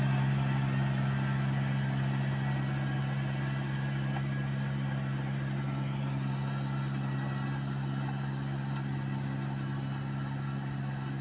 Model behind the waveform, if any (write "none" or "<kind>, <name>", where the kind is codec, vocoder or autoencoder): none